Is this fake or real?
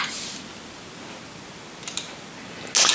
real